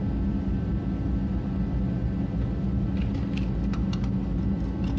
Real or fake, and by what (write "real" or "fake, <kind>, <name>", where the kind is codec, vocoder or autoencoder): real